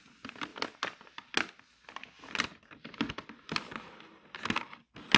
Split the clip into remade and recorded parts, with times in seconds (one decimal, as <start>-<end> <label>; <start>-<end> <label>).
0.0-5.2 recorded